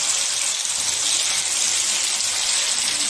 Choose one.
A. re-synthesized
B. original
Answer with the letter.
B